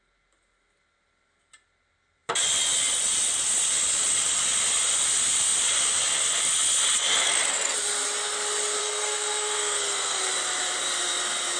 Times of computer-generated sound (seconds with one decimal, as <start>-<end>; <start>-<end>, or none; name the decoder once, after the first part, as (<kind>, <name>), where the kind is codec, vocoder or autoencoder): 8.8-10.2 (codec, SNAC)

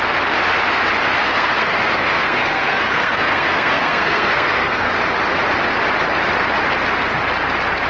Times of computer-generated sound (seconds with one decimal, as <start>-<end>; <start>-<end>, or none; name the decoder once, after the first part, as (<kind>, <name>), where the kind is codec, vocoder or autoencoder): 1.2-4.9 (codec, SNAC)

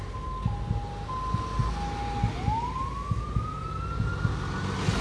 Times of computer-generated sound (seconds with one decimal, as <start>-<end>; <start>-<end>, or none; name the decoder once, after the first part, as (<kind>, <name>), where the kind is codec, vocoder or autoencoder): none

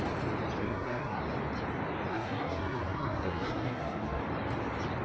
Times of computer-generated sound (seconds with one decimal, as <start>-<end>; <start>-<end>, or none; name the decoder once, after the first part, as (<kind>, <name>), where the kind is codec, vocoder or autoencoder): 0.6-1.2 (codec, SNAC); 2.1-4.2

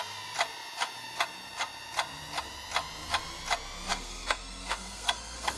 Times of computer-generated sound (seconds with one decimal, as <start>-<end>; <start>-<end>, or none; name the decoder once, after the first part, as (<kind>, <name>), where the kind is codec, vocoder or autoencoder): 3.9-5.6 (codec, SNAC)